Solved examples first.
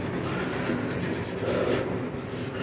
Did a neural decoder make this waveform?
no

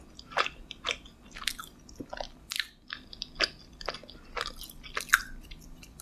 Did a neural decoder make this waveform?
no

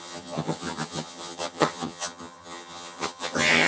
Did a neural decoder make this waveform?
yes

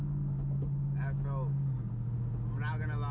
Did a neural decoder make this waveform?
no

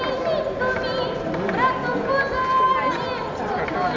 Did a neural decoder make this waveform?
no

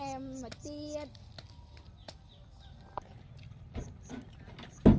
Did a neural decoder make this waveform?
no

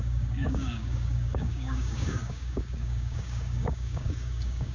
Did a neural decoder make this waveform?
yes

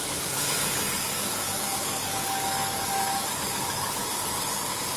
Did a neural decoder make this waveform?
yes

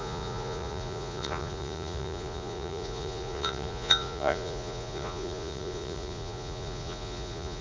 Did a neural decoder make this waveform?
yes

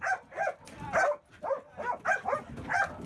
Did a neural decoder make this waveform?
no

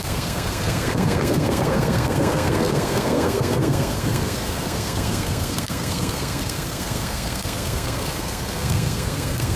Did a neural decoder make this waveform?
yes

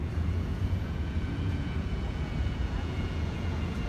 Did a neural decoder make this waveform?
yes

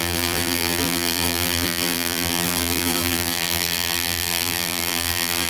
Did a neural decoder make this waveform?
yes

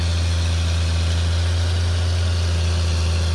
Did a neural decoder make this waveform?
no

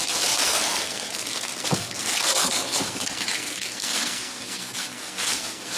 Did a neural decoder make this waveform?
yes